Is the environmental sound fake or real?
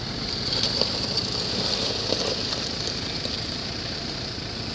real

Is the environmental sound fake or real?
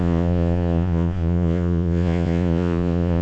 fake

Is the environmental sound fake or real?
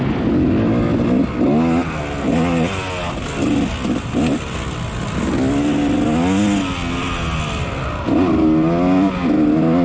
real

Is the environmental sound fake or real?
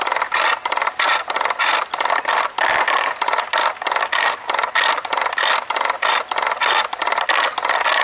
real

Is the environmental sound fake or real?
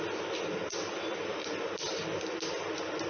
real